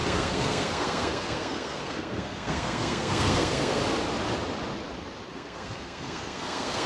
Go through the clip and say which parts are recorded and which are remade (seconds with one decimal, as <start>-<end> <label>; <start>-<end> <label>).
0.0-3.8 remade; 3.8-5.3 recorded; 5.3-6.9 remade